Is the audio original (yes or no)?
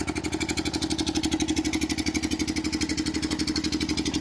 yes